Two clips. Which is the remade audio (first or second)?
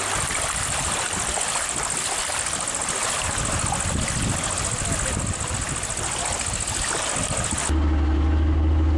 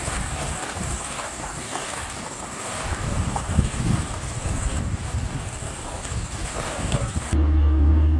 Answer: second